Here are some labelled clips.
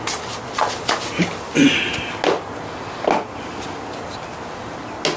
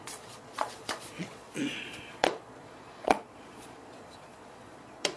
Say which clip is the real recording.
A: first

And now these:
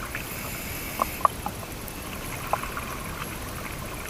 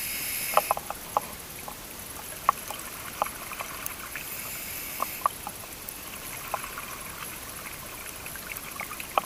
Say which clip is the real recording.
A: first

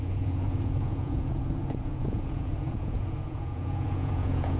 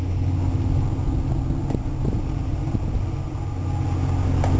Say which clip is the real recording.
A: second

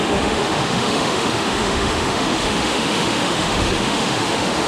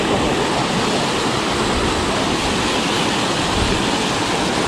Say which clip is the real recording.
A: second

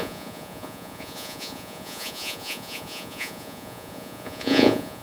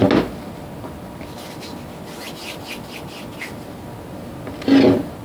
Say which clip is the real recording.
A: second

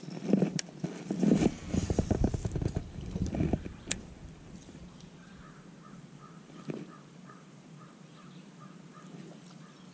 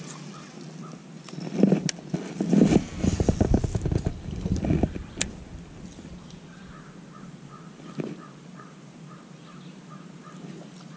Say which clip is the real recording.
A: second